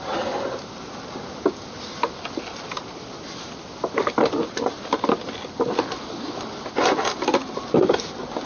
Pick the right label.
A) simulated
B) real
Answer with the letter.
B